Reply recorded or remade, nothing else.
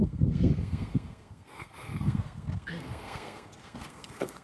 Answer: remade